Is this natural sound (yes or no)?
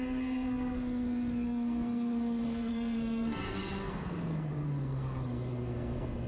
no